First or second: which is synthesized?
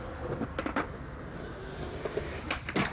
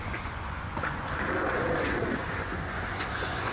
second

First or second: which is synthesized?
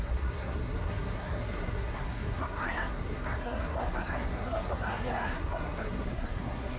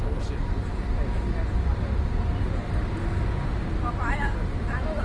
first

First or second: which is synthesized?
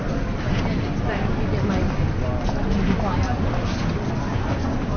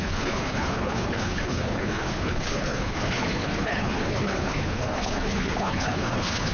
second